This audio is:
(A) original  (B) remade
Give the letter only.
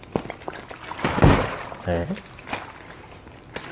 A